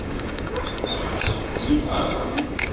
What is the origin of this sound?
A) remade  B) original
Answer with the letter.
A